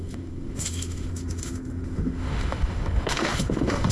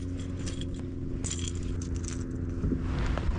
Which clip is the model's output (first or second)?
first